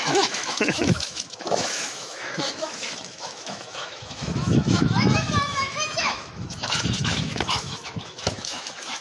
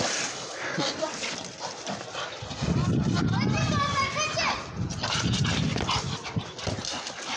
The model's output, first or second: first